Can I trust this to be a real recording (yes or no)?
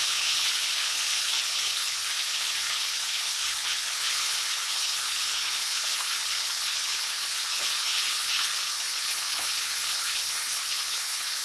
no